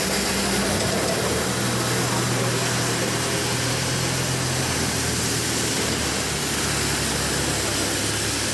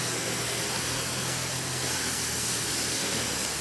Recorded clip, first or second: first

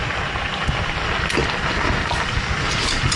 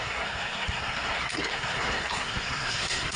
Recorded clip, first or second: first